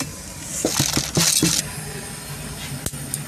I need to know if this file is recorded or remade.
recorded